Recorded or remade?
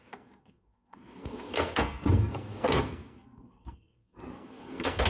remade